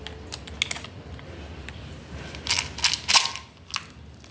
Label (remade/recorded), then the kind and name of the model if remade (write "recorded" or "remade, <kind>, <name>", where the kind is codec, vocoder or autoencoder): recorded